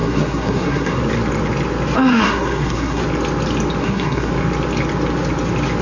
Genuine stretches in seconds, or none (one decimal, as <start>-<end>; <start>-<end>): 1.0-2.1; 3.0-3.8; 4.3-5.8